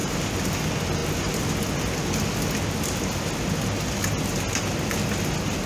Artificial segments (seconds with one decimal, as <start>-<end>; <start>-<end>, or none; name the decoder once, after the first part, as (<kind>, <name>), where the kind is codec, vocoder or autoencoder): 0.0-0.6 (vocoder, BigVGAN v2)